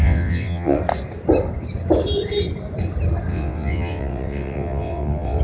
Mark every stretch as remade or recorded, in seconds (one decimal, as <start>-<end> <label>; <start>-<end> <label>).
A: 0.0-0.8 remade; 0.8-3.3 recorded; 3.3-5.4 remade